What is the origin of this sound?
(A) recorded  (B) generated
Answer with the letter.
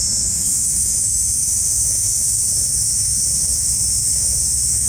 B